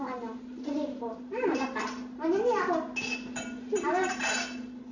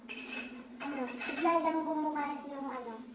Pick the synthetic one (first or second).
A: second